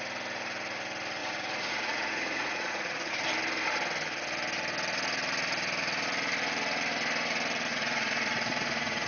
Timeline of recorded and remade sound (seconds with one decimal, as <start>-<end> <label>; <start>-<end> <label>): 0.0-1.2 recorded; 1.2-3.1 remade; 3.1-7.7 recorded; 7.7-9.1 remade